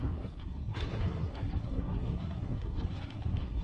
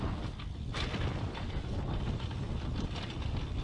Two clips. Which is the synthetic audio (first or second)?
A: first